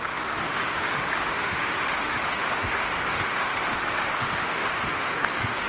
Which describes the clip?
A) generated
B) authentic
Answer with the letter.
A